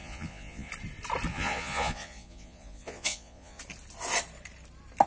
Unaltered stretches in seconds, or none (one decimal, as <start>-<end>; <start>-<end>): 0.7-1.3; 3.6-5.1